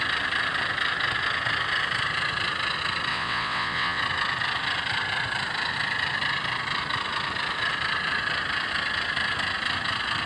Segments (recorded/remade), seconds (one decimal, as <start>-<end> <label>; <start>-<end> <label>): 0.0-3.1 recorded; 3.1-4.0 remade; 4.0-10.3 recorded